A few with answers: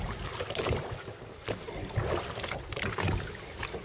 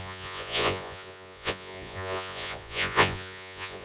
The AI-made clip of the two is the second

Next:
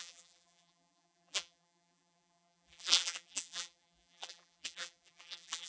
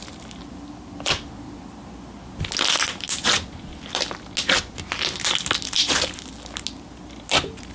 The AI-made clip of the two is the first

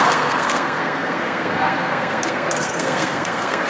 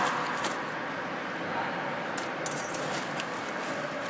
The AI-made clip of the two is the first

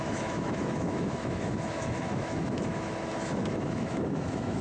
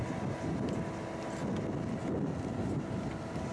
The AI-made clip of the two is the first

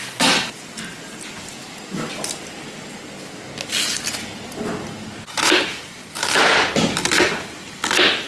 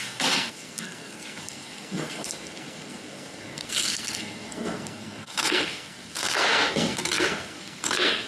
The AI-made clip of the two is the second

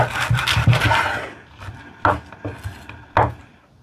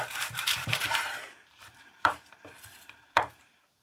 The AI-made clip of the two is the second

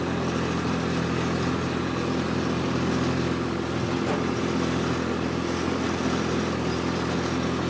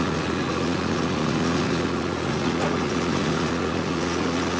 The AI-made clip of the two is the second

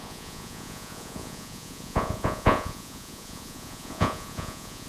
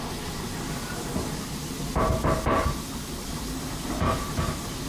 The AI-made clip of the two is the first